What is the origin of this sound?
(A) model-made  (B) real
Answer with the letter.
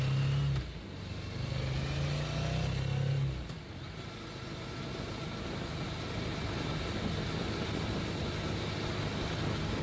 B